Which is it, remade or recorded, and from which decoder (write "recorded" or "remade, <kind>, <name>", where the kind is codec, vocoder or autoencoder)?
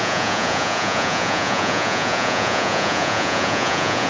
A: remade, vocoder, Vocos